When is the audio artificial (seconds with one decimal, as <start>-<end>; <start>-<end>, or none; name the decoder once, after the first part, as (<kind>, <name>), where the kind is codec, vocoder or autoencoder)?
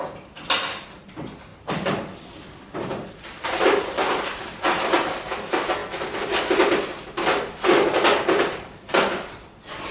1.5-4.2 (vocoder, BigVGAN v2)